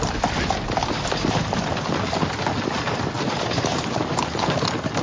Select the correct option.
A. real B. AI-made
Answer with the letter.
A